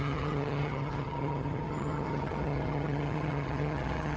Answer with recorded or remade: remade